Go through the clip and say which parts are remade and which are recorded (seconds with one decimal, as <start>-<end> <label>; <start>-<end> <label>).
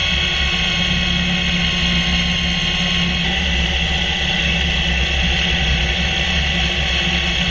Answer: 0.0-7.5 recorded